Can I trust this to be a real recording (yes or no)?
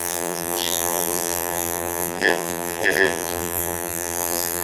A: no